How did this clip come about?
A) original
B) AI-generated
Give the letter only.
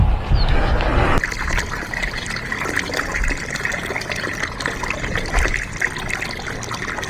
A